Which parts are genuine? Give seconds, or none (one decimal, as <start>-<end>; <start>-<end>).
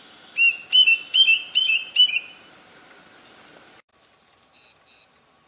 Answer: 0.0-5.5